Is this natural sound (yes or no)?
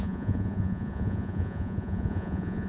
no